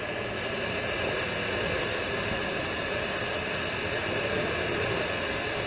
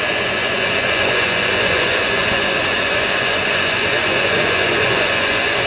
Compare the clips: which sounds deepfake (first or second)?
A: second